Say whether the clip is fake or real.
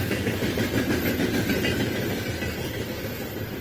real